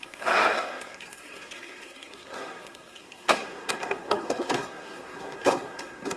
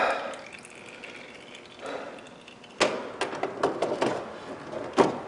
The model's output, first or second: first